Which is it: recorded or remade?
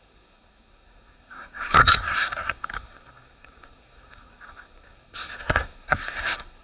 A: remade